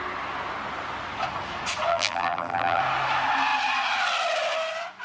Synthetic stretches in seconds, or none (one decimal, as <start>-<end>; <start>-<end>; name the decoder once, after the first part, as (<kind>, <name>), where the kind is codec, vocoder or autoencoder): 1.9-2.8 (vocoder, BigVGAN v2)